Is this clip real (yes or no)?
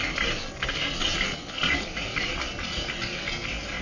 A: yes